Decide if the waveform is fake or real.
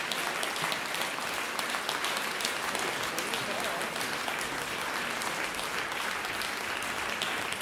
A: real